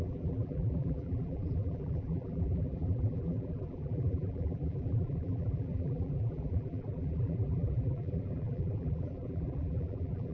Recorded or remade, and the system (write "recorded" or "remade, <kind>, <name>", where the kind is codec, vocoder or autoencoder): remade, vocoder, BigVGAN v2